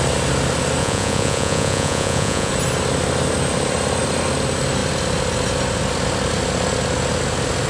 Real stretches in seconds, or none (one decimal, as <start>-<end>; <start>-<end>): 0.0-0.8; 2.5-7.7